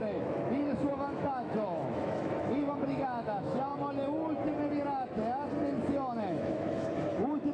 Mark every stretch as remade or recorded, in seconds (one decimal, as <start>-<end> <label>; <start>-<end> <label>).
0.0-3.7 remade; 3.7-6.2 recorded; 6.2-7.5 remade